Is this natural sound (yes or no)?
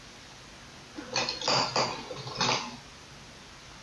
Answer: yes